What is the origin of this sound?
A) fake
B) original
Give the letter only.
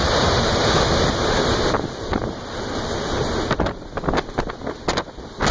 B